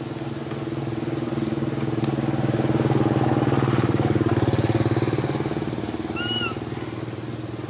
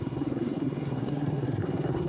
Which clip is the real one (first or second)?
first